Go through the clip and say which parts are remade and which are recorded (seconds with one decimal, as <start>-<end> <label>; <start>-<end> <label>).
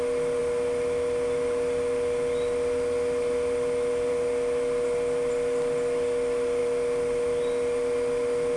0.0-8.6 recorded